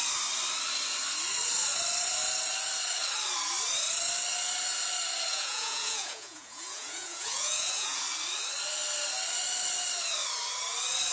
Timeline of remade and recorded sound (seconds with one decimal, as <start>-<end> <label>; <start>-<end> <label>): 0.0-5.3 recorded; 5.3-8.0 remade; 8.0-11.1 recorded